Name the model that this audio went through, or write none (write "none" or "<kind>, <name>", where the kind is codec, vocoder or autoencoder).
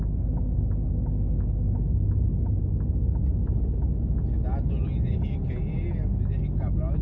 none